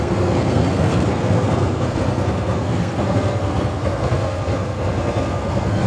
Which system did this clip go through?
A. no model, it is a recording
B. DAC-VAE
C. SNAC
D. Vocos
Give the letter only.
C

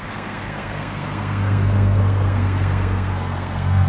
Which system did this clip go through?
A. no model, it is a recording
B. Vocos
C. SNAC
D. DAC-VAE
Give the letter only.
C